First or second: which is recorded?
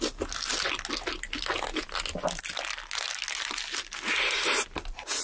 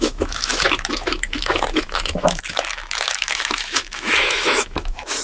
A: first